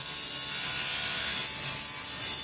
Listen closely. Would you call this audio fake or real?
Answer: real